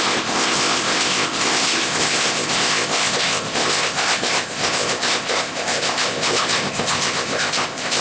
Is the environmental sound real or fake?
fake